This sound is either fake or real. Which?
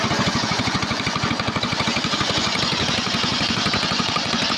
fake